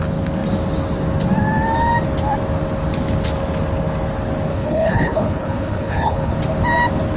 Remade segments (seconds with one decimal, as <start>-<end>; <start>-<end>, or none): 4.5-6.4